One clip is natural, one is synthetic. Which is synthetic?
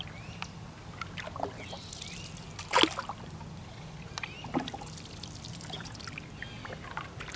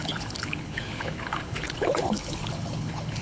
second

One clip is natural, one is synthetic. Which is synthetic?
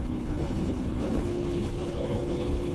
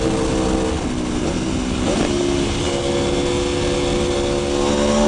first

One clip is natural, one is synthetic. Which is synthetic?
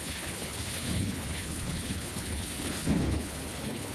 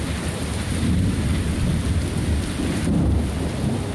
first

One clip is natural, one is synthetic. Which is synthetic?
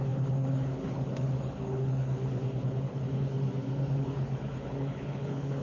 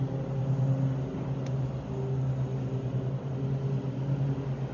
first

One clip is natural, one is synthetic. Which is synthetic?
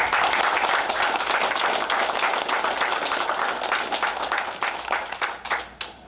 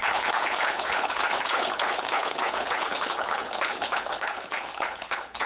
second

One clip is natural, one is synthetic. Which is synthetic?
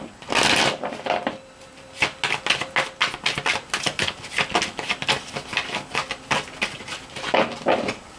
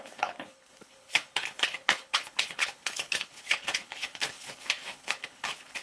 second